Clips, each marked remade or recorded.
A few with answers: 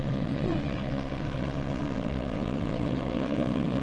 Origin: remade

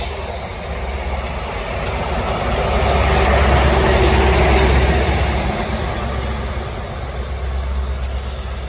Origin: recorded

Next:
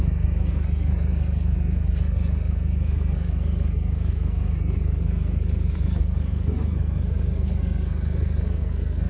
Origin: remade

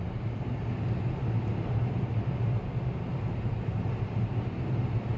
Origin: recorded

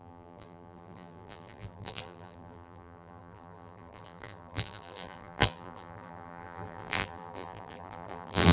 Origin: remade